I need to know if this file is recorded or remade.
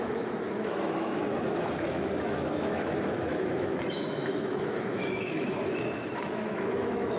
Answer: remade